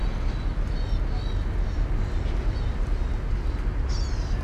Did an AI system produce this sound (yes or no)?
no